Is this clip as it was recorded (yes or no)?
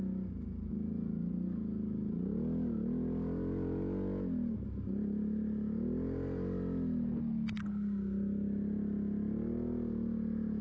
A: yes